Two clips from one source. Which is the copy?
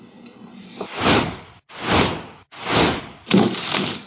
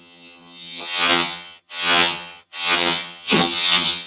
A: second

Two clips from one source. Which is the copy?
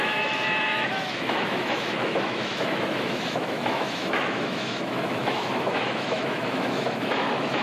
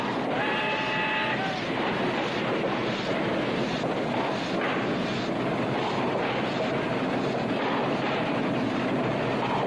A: first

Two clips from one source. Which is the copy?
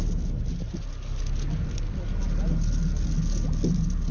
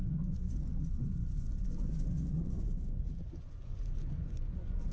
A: second